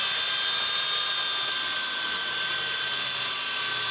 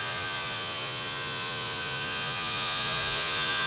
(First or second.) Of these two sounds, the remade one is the second